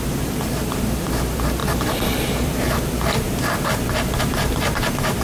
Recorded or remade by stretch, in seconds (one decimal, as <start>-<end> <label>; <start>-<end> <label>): 0.0-5.2 remade